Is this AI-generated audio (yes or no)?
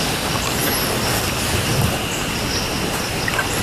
no